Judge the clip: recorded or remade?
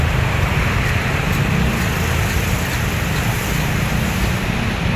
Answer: recorded